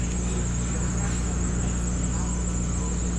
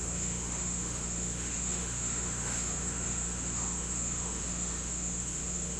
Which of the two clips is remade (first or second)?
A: second